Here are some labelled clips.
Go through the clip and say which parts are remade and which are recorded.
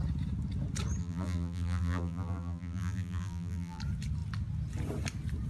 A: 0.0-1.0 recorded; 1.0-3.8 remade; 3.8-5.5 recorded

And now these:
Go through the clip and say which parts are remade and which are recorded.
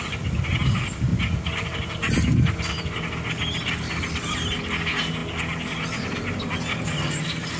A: 0.0-7.6 recorded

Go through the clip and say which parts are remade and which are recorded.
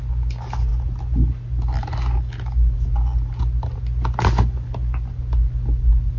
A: 0.0-6.2 recorded